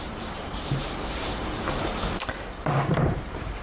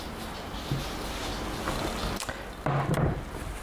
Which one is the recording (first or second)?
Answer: second